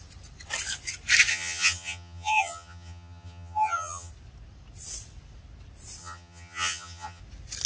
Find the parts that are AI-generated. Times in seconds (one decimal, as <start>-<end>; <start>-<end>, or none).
1.3-4.1; 6.0-7.2